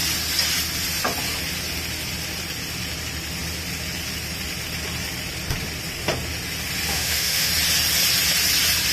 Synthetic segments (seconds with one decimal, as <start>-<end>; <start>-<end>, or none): 6.9-7.5